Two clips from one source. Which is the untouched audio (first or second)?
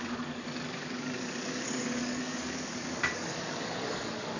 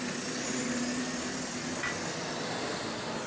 second